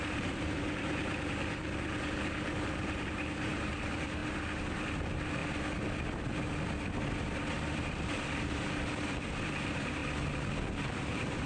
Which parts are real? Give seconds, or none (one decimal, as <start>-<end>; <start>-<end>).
5.4-7.5; 10.0-10.8